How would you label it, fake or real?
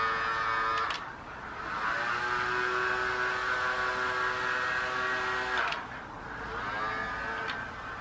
real